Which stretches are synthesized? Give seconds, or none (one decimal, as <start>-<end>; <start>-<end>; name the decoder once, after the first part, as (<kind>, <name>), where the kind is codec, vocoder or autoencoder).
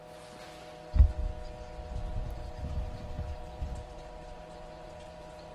2.1-5.5 (vocoder, BigVGAN v2)